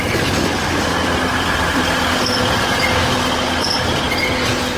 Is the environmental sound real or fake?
real